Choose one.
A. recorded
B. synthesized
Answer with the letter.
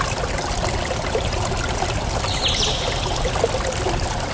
A